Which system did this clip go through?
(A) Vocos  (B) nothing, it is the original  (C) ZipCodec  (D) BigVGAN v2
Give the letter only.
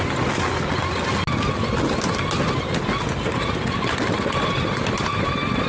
B